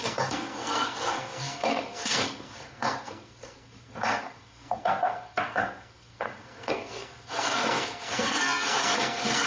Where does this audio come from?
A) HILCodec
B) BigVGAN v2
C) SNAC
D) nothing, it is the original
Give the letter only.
C